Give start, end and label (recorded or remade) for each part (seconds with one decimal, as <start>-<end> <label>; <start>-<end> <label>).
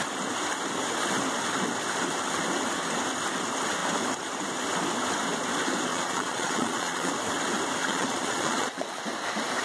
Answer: 0.0-5.9 recorded; 5.9-7.1 remade; 7.1-7.8 recorded; 7.8-9.0 remade; 9.0-9.6 recorded